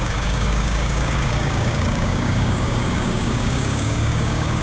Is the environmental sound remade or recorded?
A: remade